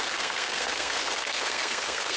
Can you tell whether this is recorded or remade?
remade